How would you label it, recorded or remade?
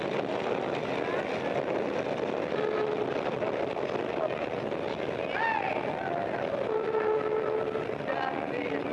recorded